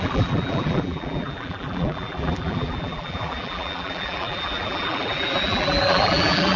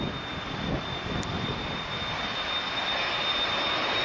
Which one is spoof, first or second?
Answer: first